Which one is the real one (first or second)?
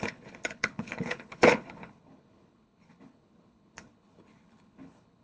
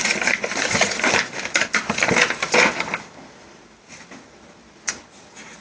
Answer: second